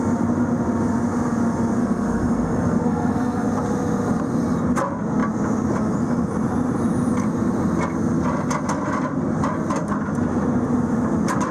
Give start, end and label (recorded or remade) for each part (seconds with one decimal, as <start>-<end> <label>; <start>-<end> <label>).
0.0-1.8 recorded; 1.8-3.5 remade; 3.5-11.5 recorded